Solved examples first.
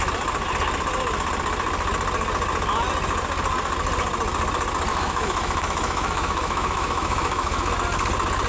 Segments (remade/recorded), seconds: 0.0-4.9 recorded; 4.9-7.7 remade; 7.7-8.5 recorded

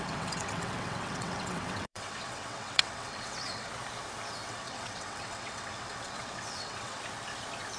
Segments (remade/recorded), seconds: 0.0-3.7 remade; 3.7-4.5 recorded; 4.5-7.0 remade; 7.0-7.8 recorded

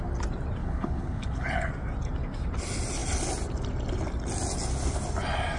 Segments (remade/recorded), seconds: 0.0-0.6 recorded; 0.6-1.7 remade; 1.7-5.6 recorded

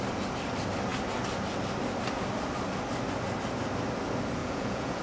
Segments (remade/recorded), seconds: 0.0-4.4 recorded; 4.4-5.0 remade